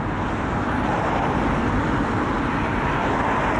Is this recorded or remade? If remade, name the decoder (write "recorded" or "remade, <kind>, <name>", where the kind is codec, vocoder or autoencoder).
recorded